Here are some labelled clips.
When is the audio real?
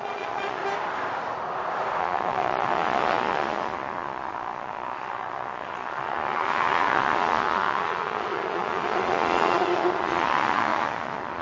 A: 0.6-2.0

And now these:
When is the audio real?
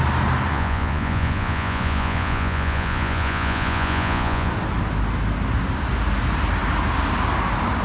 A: 0.0-0.5; 4.5-7.8